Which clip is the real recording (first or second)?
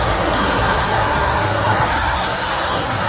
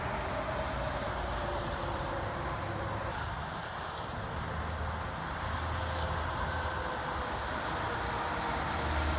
second